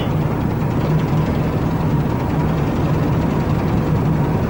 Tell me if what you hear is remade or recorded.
recorded